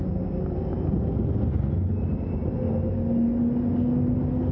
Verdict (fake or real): real